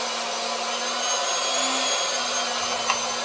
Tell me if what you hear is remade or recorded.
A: recorded